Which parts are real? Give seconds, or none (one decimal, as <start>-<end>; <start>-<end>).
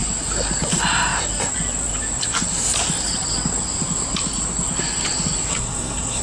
0.0-5.5